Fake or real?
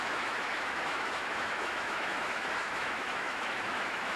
fake